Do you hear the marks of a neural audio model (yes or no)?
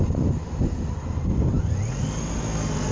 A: no